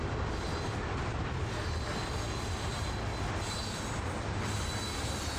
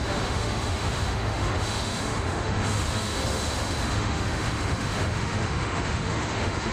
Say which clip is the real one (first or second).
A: first